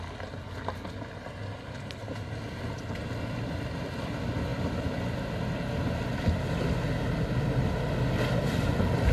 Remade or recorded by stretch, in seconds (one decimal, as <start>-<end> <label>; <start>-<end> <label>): 0.0-9.1 recorded